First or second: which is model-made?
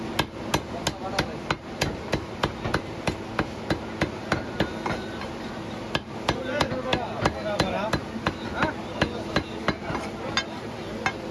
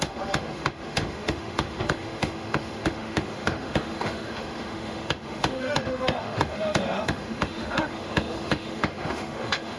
second